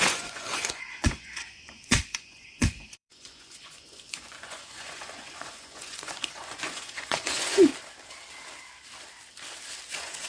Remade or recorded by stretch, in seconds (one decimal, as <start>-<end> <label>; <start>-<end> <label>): 0.0-7.7 remade; 7.7-9.9 recorded; 9.9-10.3 remade